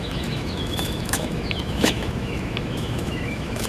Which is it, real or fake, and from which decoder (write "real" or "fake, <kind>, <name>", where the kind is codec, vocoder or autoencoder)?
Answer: fake, autoencoder, DAC-VAE